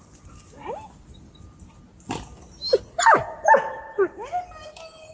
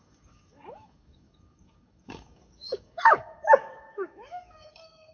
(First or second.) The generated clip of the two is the second